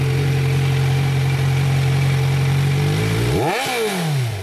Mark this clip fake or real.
real